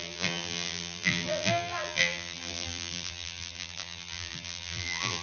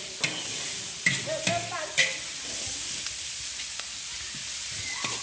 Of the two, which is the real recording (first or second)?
second